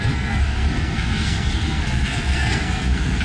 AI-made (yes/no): yes